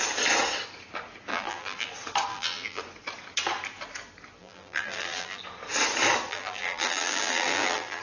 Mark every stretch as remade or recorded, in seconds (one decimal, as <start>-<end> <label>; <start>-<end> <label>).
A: 0.0-1.3 recorded; 1.3-1.9 remade; 1.9-2.3 recorded; 2.3-2.8 remade; 2.8-4.4 recorded; 4.4-5.4 remade; 5.4-6.3 recorded; 6.3-8.0 remade